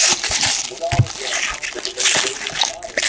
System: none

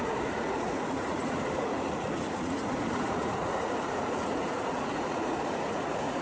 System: vocoder, Vocos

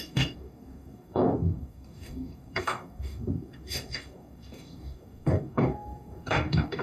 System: codec, DAC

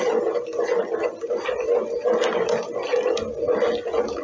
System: none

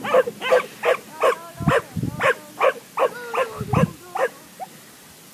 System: none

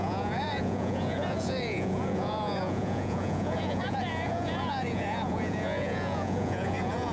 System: vocoder, Vocos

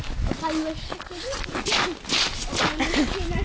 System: none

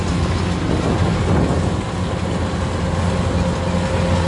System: none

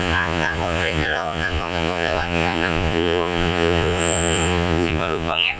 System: vocoder, Vocos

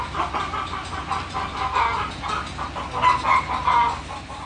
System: none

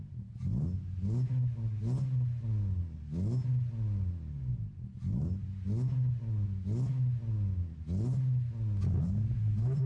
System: none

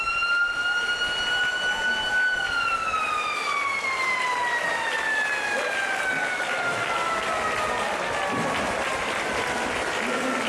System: none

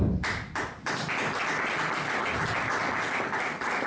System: none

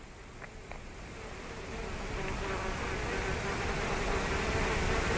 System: none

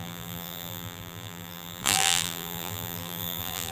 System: vocoder, BigVGAN v2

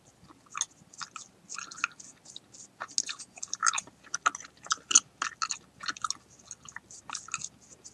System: none